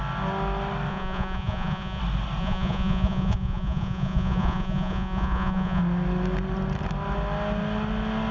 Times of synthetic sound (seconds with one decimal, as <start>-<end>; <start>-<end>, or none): 0.9-2.0; 2.4-5.8